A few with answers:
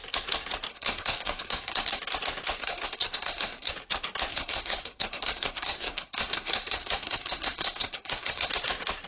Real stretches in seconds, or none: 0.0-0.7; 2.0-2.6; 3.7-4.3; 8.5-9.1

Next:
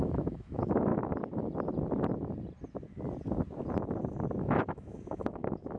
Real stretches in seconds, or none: 0.9-4.4

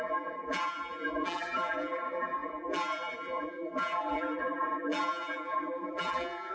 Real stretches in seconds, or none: none

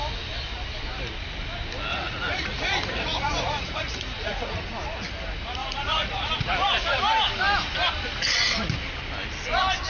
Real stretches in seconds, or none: 0.0-1.9; 4.6-5.6; 6.3-9.9

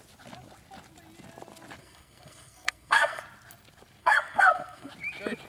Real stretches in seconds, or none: 0.0-1.8; 3.2-4.0; 4.9-5.5

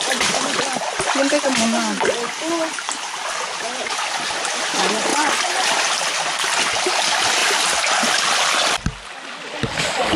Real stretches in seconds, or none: 0.0-10.2